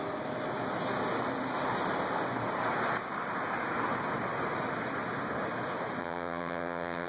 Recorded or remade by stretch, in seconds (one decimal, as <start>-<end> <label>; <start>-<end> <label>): 0.0-6.0 recorded; 6.0-7.1 remade